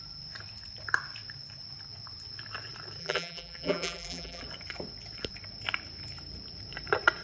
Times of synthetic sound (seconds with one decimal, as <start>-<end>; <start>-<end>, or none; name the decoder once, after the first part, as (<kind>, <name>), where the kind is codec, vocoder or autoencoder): 3.0-4.4 (vocoder, BigVGAN v2)